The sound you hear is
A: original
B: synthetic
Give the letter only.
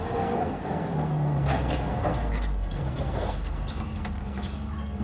B